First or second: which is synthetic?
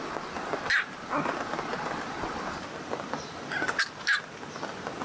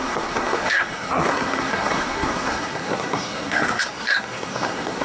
second